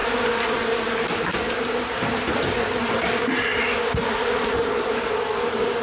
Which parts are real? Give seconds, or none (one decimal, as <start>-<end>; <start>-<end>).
2.9-3.5; 4.5-5.8